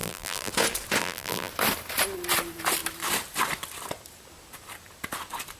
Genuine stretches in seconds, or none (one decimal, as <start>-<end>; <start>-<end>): 0.5-1.0; 1.5-5.6